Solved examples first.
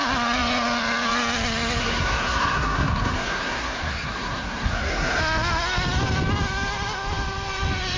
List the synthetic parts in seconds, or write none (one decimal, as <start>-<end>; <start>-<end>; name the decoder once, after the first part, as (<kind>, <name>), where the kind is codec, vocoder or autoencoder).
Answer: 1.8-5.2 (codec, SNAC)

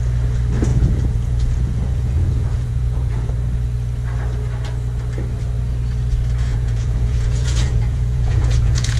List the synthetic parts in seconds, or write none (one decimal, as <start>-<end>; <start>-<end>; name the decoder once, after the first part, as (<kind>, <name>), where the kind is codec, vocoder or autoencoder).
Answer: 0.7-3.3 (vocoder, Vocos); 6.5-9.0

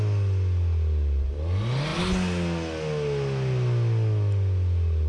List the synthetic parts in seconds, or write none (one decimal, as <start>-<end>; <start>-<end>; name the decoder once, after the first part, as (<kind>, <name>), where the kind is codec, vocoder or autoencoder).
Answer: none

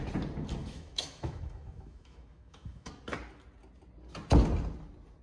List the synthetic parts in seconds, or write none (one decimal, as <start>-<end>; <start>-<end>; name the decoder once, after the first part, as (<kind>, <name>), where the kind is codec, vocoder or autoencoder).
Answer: 0.6-2.9 (autoencoder, DAC-VAE)